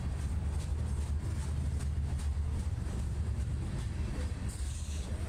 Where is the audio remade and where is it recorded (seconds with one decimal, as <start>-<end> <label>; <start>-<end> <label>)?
0.0-5.3 recorded